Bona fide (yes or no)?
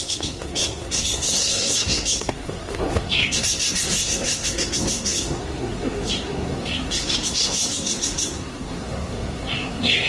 no